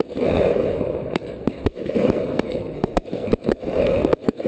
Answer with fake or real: fake